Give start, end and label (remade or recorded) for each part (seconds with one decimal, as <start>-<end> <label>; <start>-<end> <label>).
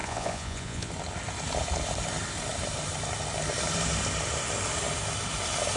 0.0-0.9 remade; 0.9-5.8 recorded